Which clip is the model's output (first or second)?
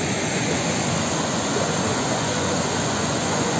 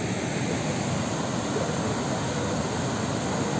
first